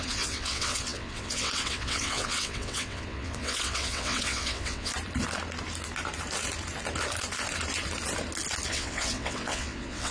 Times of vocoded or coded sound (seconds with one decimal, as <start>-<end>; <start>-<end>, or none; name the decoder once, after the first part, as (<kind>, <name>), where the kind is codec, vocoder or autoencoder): 0.0-4.9 (vocoder, WaveNeXt); 8.7-10.1